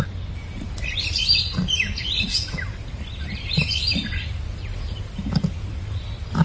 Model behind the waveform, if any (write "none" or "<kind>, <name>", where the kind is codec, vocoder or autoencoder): none